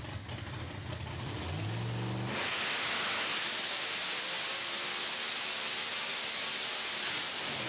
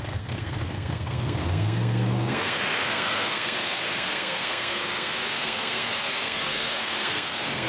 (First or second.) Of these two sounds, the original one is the first